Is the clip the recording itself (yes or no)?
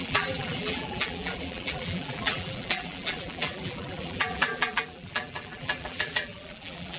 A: no